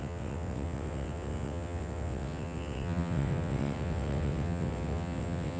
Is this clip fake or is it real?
fake